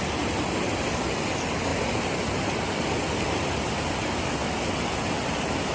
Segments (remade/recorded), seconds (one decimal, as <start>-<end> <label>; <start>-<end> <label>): 0.0-5.7 recorded

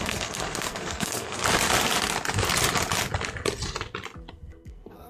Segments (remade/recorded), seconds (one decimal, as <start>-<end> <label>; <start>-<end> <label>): 0.0-1.4 remade; 1.4-4.3 recorded; 4.3-5.1 remade

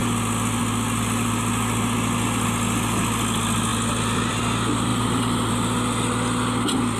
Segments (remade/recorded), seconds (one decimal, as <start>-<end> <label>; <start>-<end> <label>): 0.0-3.7 recorded; 3.7-4.4 remade; 4.4-4.9 recorded; 4.9-5.5 remade; 5.5-7.0 recorded

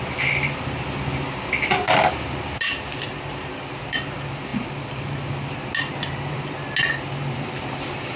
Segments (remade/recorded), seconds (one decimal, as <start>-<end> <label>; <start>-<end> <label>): 0.0-8.2 recorded

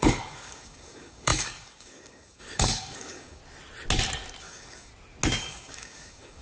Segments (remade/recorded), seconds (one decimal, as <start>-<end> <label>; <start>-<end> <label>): 0.0-3.4 remade; 3.4-4.4 recorded; 4.4-4.9 remade; 4.9-5.4 recorded; 5.4-6.4 remade

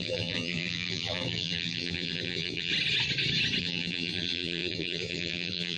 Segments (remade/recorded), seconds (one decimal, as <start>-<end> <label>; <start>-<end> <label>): 0.0-2.7 remade; 2.7-3.6 recorded; 3.6-5.8 remade

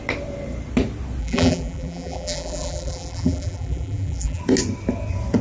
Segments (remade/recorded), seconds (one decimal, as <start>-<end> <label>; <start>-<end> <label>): 0.0-1.2 recorded; 1.2-4.4 remade; 4.4-5.4 recorded